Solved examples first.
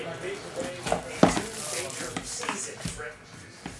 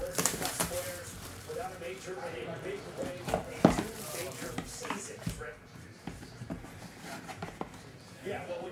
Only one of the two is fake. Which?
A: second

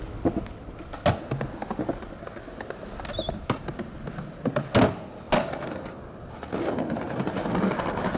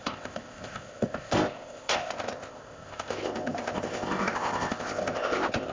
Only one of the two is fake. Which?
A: second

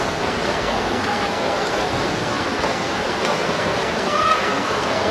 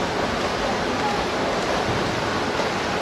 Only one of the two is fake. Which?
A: first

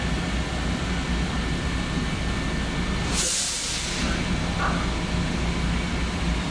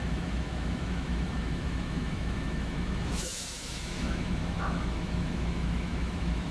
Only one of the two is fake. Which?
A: second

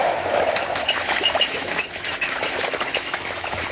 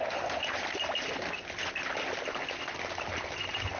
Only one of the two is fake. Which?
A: first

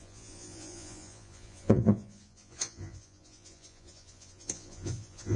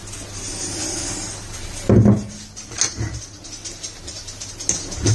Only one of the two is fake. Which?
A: first